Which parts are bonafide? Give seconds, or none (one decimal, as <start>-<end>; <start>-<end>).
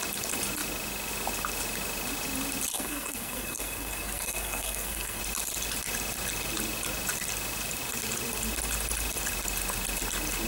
0.0-2.7; 5.2-10.5